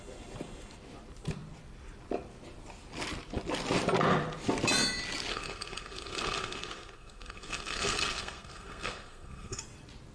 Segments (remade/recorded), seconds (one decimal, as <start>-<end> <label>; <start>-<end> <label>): 0.0-5.3 recorded; 5.3-9.6 remade; 9.6-10.1 recorded